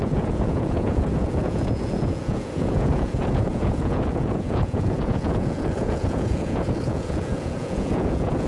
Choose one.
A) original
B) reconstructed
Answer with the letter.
B